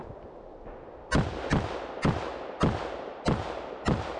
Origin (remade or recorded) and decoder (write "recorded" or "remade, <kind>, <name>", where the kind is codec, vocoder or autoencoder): recorded